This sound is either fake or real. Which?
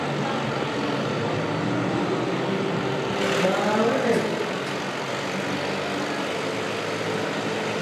real